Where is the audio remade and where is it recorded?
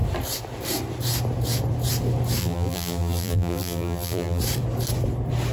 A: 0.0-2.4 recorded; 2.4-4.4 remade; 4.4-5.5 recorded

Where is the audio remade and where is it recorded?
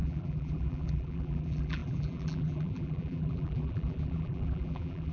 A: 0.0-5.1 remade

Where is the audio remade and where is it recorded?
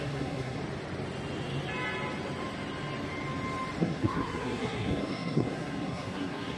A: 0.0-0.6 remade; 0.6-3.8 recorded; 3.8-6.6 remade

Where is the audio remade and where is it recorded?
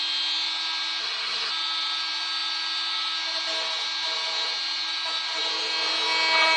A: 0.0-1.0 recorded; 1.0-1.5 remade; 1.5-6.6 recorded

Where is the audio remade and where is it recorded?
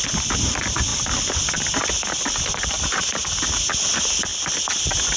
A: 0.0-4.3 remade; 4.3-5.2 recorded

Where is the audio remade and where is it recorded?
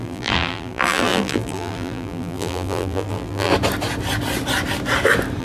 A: 0.0-3.5 remade; 3.5-5.4 recorded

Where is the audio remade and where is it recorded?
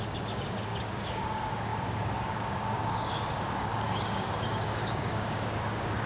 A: 0.0-6.1 remade